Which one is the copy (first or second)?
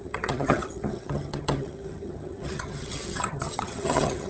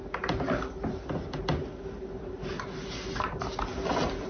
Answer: first